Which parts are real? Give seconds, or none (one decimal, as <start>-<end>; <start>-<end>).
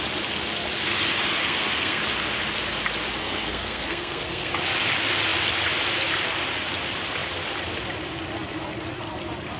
0.0-1.4; 2.0-3.2; 4.5-9.6